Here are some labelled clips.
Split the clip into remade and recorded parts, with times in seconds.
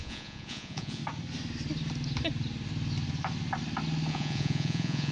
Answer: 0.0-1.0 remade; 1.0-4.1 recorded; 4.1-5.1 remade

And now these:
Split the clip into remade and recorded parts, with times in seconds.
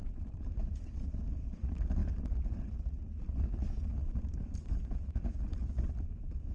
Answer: 0.0-1.1 remade; 1.1-6.5 recorded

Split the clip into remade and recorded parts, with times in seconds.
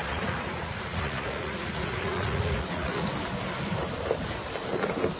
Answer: 0.0-3.1 remade; 3.1-5.2 recorded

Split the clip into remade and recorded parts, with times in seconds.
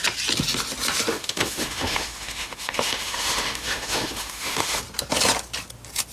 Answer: 0.0-1.1 recorded; 1.1-4.8 remade; 4.8-6.1 recorded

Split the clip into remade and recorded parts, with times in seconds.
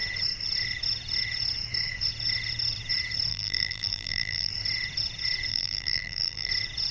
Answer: 0.0-3.3 recorded; 3.3-4.5 remade; 4.5-5.5 recorded; 5.5-6.5 remade; 6.5-6.9 recorded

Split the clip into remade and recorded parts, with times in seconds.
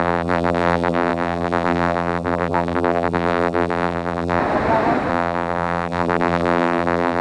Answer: 0.0-4.4 remade; 4.4-5.1 recorded; 5.1-7.2 remade